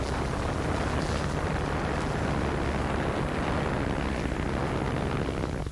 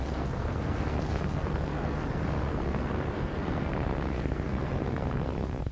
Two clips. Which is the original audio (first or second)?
first